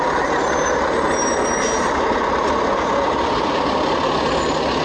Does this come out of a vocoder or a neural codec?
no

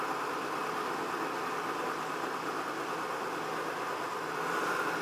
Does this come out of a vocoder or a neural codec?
no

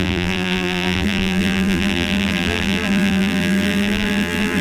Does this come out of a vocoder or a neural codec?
yes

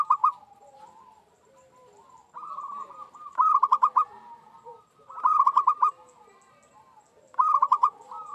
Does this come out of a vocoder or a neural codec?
no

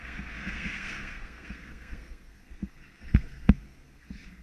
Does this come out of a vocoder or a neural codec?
yes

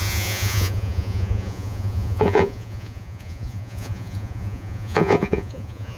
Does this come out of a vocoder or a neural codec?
yes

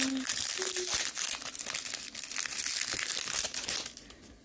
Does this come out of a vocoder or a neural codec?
no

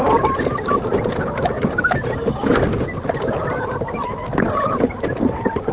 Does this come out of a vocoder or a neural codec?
no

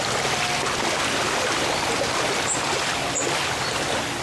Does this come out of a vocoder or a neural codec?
no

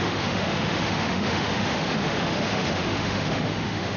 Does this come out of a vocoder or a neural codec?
yes